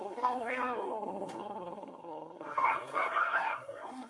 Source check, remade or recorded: remade